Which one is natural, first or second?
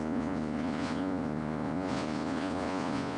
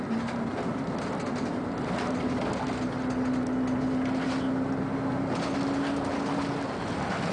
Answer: second